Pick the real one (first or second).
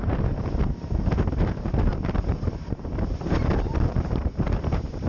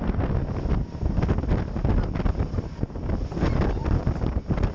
second